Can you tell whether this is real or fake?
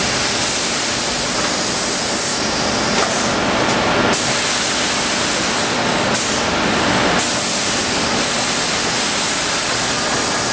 real